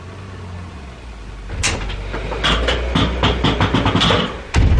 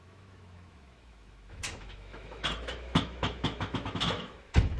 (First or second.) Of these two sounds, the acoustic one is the first